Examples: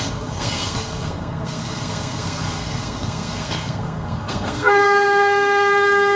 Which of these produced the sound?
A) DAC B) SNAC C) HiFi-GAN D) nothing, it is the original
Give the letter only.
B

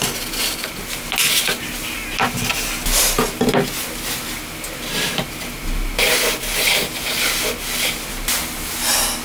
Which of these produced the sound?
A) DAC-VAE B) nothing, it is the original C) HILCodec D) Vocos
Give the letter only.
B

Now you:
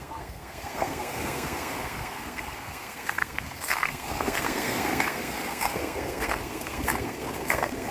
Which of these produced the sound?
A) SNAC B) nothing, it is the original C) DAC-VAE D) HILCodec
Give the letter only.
A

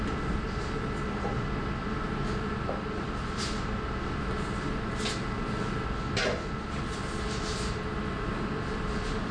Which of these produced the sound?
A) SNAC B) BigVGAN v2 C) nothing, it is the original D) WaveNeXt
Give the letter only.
C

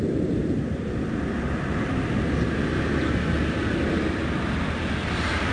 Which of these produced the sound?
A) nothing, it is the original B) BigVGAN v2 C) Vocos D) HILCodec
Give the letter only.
B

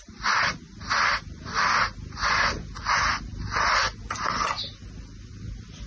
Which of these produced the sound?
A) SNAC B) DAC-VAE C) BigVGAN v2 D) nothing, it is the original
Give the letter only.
D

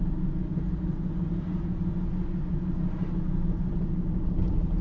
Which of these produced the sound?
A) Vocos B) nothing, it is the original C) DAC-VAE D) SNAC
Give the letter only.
B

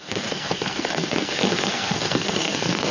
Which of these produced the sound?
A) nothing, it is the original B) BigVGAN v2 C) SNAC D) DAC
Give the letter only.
C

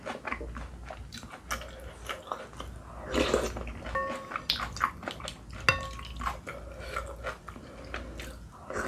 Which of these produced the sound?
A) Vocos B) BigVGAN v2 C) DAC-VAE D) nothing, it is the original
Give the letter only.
D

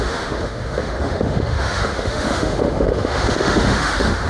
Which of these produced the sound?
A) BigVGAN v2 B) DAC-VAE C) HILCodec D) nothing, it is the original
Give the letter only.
B